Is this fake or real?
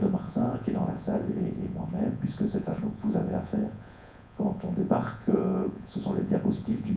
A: fake